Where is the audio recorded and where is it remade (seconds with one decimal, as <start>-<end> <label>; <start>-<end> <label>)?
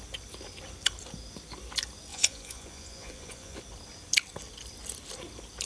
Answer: 0.0-2.1 recorded; 2.1-3.6 remade; 3.6-5.6 recorded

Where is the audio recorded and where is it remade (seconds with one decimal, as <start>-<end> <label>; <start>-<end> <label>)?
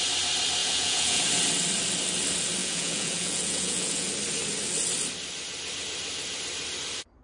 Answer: 0.0-0.6 recorded; 0.6-1.2 remade; 1.2-2.6 recorded; 2.6-4.1 remade; 4.1-7.2 recorded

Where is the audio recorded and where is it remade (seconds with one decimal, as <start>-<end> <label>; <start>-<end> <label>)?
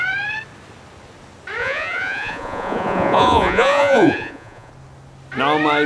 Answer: 0.0-1.6 recorded; 1.6-4.7 remade; 4.7-5.9 recorded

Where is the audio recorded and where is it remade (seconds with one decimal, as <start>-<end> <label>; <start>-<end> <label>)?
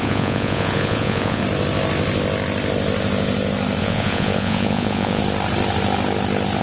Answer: 0.0-1.4 remade; 1.4-3.8 recorded; 3.8-5.2 remade; 5.2-6.6 recorded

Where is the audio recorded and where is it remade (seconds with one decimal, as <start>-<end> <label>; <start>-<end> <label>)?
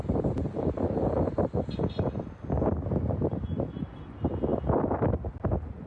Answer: 0.0-5.9 recorded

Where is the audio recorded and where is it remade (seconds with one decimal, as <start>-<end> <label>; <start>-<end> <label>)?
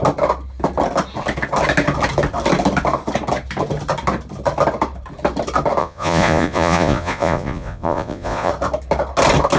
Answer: 0.0-5.8 recorded; 5.8-8.5 remade; 8.5-9.6 recorded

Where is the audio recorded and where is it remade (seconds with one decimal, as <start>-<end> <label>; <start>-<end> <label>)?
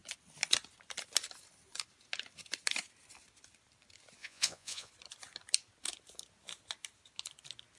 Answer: 0.0-4.2 recorded; 4.2-4.9 remade; 4.9-7.8 recorded